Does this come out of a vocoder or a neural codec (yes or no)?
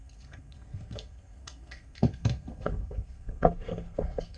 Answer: yes